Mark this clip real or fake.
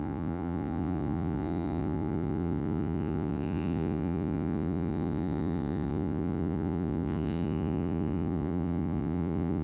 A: fake